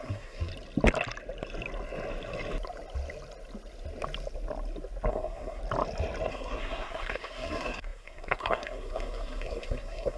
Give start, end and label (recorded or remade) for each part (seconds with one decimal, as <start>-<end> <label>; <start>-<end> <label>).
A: 0.0-0.5 remade; 0.5-5.1 recorded; 5.1-5.6 remade; 5.6-6.3 recorded; 6.3-10.2 remade